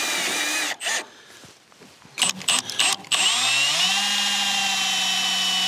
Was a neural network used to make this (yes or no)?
no